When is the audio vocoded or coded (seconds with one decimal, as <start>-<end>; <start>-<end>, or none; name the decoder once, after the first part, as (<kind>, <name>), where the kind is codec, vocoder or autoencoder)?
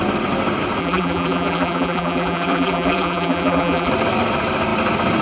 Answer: 0.8-3.9 (vocoder, BigVGAN v2)